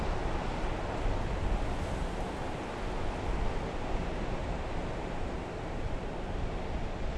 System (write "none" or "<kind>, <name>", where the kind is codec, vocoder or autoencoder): none